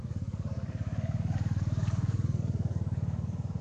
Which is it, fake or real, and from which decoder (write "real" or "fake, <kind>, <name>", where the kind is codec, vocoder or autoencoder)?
fake, codec, DAC